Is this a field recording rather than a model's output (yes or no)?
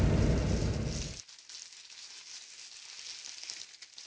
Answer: yes